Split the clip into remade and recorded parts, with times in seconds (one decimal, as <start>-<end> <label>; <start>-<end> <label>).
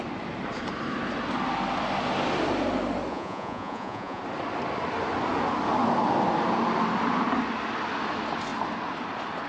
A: 0.0-3.1 recorded; 3.1-4.2 remade; 4.2-9.5 recorded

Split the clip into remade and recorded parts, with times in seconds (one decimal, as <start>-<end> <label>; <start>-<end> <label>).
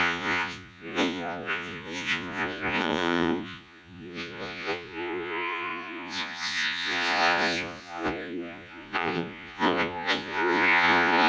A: 0.0-11.3 remade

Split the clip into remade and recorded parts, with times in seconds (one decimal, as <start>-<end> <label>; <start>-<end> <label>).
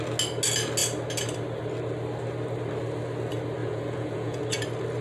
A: 0.0-3.6 recorded; 3.6-4.4 remade; 4.4-5.0 recorded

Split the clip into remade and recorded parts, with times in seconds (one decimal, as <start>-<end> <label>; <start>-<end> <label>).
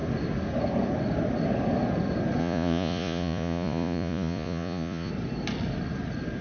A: 0.0-2.4 recorded; 2.4-5.1 remade; 5.1-6.4 recorded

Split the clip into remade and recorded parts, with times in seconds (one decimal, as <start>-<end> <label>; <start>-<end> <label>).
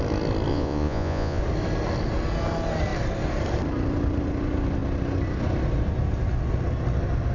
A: 0.0-0.5 recorded; 0.5-1.4 remade; 1.4-7.3 recorded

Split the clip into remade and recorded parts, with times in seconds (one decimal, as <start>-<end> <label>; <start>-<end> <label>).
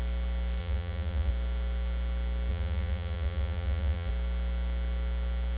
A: 0.0-0.6 recorded; 0.6-1.3 remade; 1.3-2.5 recorded; 2.5-4.1 remade; 4.1-5.6 recorded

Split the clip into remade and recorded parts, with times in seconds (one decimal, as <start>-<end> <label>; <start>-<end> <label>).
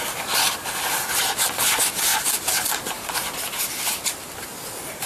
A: 0.0-5.1 recorded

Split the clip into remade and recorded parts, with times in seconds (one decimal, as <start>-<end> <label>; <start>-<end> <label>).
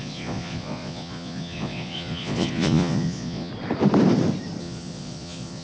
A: 0.0-3.5 remade; 3.5-4.6 recorded; 4.6-5.6 remade